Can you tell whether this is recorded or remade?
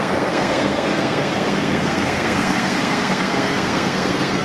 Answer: remade